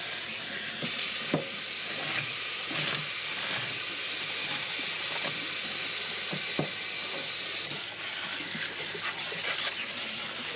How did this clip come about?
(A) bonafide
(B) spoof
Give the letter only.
A